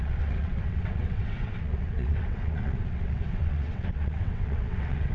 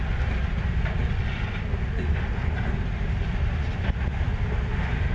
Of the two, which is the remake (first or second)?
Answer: first